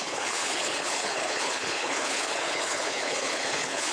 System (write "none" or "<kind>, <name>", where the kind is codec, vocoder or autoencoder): codec, HILCodec